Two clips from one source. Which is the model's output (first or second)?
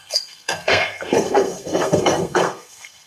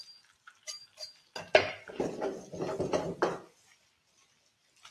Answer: first